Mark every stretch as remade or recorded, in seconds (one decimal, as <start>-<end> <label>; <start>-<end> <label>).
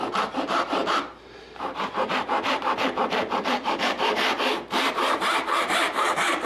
0.0-4.3 remade; 4.3-4.9 recorded; 4.9-6.5 remade